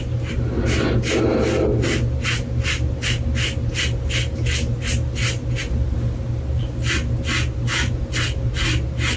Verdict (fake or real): real